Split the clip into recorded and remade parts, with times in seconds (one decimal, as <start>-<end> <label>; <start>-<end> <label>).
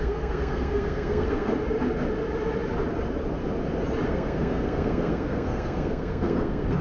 0.0-1.5 remade; 1.5-4.1 recorded; 4.1-6.8 remade